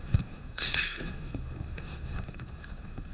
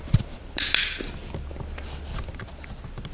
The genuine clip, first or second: second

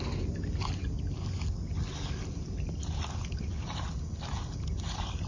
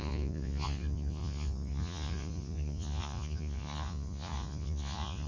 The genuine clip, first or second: first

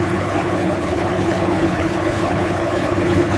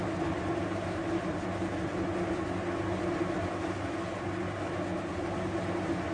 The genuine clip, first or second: second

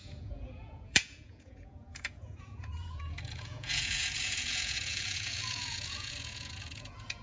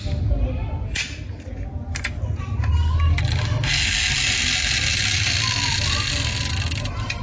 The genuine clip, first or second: second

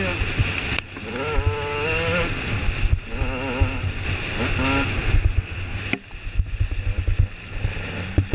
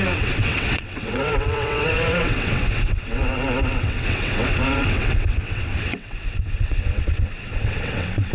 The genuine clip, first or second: first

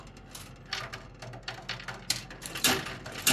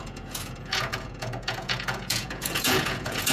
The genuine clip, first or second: first